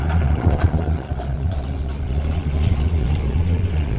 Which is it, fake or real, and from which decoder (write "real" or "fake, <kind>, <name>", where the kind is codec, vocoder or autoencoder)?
fake, vocoder, Vocos